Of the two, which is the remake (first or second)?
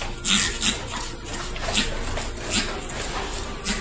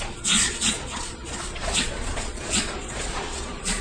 second